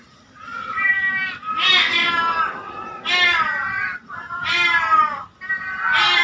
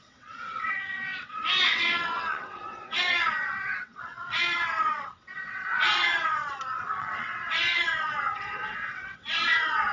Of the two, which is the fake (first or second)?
second